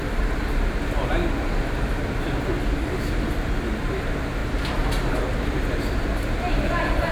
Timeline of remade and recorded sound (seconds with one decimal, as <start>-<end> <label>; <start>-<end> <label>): 0.0-4.4 recorded; 4.4-7.1 remade